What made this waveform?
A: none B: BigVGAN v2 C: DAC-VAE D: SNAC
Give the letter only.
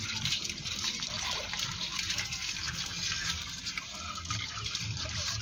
A